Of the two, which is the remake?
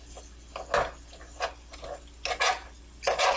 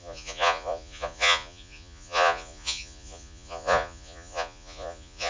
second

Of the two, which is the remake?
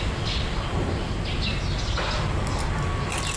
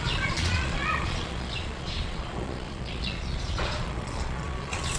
second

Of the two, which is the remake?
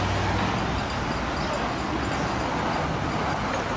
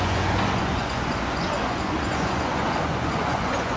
second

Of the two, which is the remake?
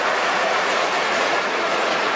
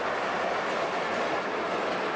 first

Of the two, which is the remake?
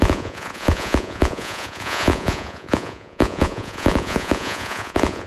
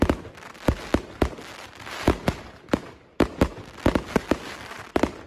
first